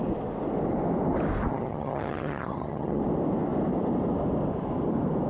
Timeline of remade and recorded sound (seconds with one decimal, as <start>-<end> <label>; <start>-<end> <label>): 0.0-1.5 recorded; 1.5-3.0 remade; 3.0-5.3 recorded